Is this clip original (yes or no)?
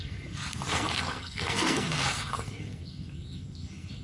no